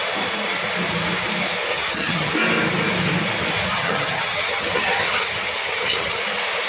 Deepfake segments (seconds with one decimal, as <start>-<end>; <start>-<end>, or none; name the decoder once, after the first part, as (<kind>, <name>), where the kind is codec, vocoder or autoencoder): 1.7-2.3 (vocoder, HiFi-GAN); 3.7-6.2